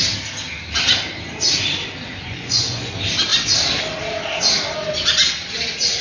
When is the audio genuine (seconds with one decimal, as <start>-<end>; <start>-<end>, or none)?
0.0-2.2; 2.9-6.0